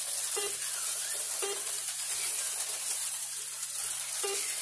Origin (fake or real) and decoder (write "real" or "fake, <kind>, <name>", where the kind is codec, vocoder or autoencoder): fake, vocoder, BigVGAN v2